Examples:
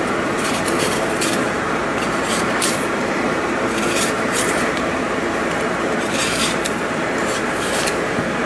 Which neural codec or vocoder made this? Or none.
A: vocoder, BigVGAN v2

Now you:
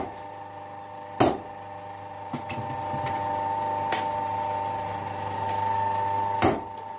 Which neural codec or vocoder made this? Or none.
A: none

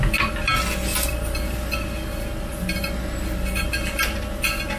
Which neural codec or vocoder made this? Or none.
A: none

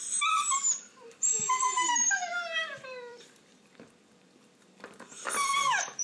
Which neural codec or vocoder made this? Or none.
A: vocoder, BigVGAN v2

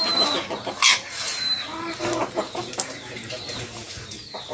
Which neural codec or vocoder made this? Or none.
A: vocoder, BigVGAN v2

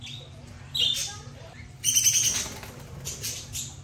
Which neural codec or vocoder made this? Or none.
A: none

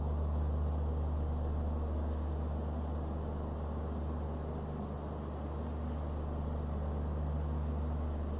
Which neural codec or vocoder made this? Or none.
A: none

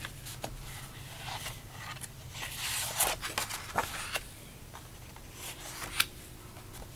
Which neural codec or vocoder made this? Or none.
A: none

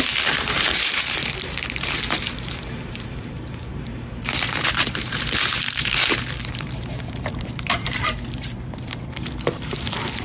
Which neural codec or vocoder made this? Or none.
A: vocoder, BigVGAN v2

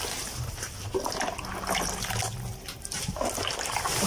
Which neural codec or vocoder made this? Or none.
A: none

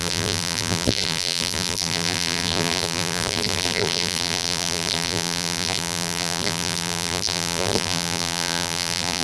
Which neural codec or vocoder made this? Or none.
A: vocoder, BigVGAN v2